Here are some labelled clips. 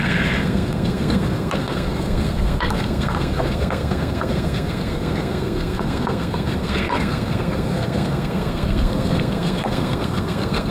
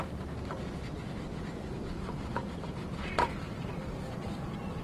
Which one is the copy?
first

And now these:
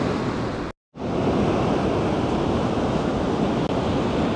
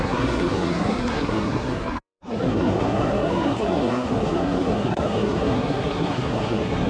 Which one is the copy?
second